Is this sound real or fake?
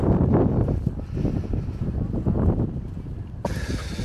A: real